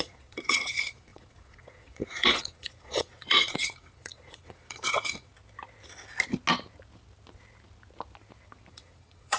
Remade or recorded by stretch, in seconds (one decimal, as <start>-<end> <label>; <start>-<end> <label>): 0.0-5.3 remade; 5.3-8.7 recorded; 8.7-9.4 remade